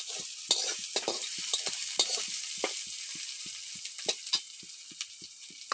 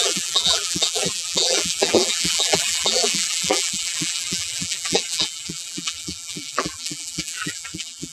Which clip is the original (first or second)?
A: first